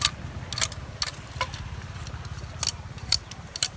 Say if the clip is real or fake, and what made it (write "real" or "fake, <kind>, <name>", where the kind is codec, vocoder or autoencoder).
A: real